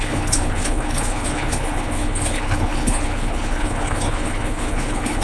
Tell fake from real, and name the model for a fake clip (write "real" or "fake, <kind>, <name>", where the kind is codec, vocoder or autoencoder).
fake, codec, HILCodec